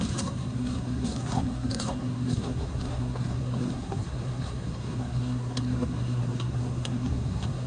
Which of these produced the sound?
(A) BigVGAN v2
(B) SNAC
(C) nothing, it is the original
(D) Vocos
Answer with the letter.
B